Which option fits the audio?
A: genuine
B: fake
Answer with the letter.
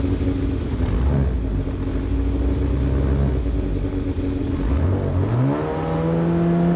A